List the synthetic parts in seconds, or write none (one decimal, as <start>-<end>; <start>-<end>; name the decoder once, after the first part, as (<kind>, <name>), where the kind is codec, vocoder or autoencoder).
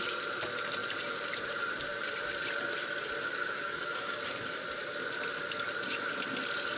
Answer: 3.3-4.1 (codec, DAC)